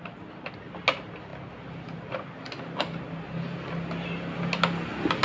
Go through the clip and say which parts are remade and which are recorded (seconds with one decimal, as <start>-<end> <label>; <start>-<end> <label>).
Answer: 0.0-5.2 recorded